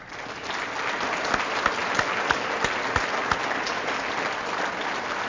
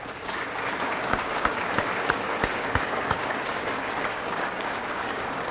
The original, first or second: first